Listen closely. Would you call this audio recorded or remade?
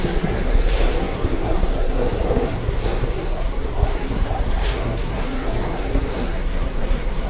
remade